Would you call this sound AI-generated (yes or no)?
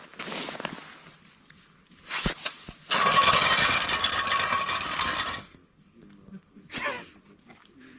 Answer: no